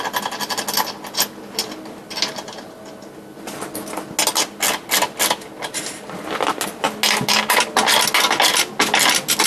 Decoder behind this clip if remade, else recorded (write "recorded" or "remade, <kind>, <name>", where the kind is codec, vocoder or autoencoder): recorded